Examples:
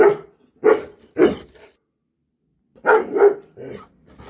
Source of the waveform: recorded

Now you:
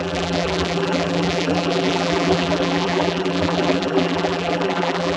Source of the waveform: remade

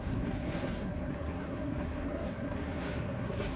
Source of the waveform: remade